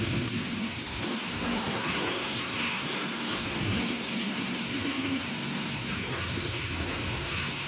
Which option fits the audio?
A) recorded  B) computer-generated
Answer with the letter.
B